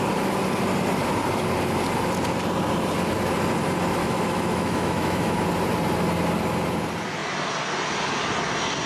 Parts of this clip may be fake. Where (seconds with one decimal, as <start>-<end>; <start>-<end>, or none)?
4.0-5.4